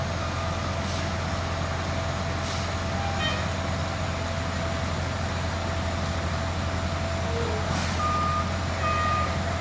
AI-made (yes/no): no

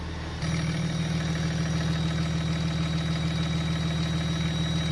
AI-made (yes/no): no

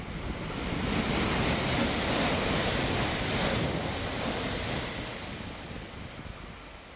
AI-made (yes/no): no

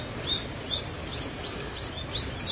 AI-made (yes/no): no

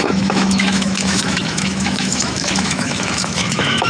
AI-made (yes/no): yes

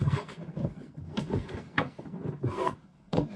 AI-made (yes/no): yes